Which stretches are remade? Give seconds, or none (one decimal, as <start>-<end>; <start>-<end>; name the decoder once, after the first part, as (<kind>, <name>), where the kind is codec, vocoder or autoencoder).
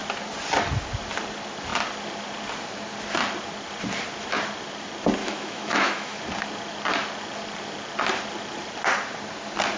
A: 5.2-6.2 (autoencoder, DAC-VAE)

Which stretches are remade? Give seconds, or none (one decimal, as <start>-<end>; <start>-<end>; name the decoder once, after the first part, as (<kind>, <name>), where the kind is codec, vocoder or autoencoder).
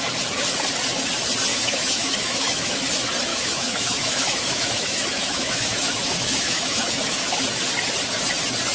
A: 1.5-2.8 (autoencoder, DAC-VAE); 3.3-7.4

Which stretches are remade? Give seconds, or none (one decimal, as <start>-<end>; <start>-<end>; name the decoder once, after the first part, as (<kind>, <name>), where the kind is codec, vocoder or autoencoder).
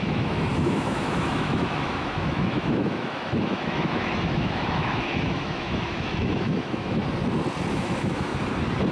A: 0.0-7.0 (autoencoder, DAC-VAE); 7.7-8.3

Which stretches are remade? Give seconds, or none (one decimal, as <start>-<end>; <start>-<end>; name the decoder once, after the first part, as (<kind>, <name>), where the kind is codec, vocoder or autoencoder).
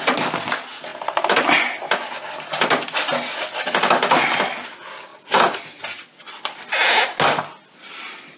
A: none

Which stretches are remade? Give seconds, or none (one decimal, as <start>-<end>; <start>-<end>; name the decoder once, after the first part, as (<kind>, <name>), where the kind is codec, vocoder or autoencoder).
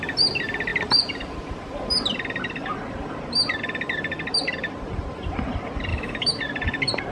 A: 5.9-6.4 (autoencoder, DAC-VAE)